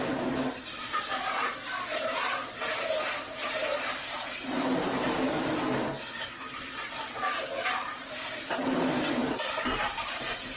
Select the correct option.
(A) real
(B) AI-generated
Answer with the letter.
B